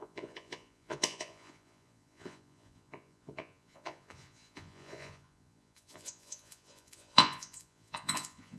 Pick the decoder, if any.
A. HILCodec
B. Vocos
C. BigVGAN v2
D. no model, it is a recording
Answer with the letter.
B